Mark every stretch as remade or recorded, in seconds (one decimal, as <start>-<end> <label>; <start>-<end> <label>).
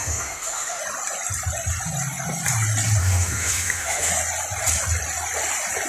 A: 0.0-0.8 remade; 0.8-3.0 recorded; 3.0-4.1 remade; 4.1-5.9 recorded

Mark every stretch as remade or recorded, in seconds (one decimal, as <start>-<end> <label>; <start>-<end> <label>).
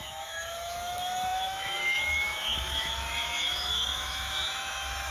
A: 0.0-5.1 remade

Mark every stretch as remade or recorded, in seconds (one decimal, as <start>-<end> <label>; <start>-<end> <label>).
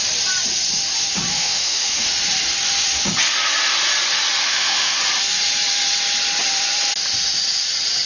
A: 0.0-1.3 recorded; 1.3-2.1 remade; 2.1-4.4 recorded; 4.4-5.0 remade; 5.0-8.1 recorded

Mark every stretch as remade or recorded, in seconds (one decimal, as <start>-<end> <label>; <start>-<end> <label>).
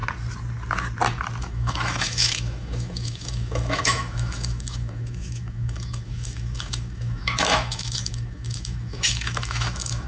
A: 0.0-1.4 recorded; 1.4-10.1 remade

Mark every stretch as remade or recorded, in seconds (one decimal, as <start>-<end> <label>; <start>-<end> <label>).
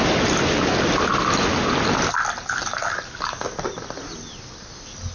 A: 0.0-5.1 recorded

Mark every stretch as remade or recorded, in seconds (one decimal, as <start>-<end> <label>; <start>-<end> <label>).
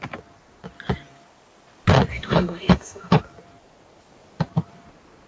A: 0.0-2.1 recorded; 2.1-3.2 remade; 3.2-5.3 recorded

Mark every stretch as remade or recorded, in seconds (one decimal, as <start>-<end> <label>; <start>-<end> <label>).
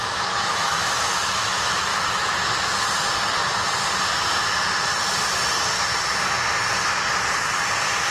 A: 0.0-2.3 remade; 2.3-8.1 recorded